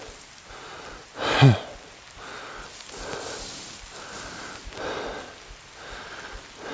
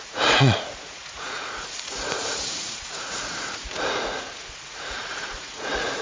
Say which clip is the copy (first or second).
second